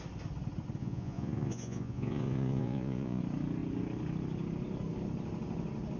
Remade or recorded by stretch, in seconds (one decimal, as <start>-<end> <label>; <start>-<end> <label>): 0.0-0.8 recorded; 0.8-3.2 remade; 3.2-6.0 recorded